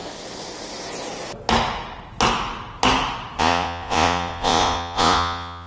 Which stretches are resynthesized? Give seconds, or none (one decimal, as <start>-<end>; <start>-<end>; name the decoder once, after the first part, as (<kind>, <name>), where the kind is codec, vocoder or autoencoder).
3.4-5.7 (vocoder, Vocos)